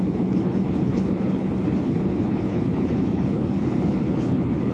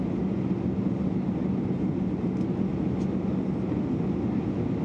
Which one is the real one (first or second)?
second